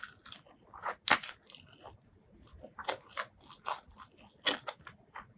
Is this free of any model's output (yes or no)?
yes